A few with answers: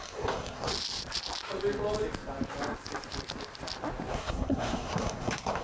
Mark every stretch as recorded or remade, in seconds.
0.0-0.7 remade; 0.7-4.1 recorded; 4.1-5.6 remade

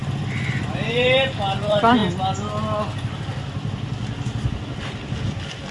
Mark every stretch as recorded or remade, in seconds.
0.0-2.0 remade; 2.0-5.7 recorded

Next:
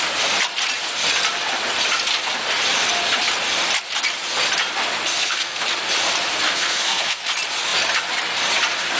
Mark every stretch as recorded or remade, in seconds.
0.0-5.1 recorded; 5.1-5.6 remade; 5.6-6.5 recorded; 6.5-7.2 remade; 7.2-9.0 recorded

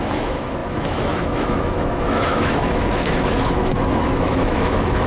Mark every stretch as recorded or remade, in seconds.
0.0-5.1 remade

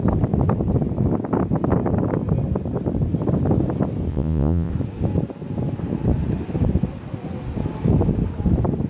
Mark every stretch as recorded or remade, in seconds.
0.0-4.1 recorded; 4.1-4.7 remade; 4.7-8.9 recorded

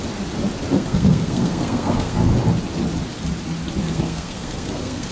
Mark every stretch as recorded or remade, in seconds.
0.0-0.7 recorded; 0.7-2.2 remade; 2.2-3.8 recorded; 3.8-5.1 remade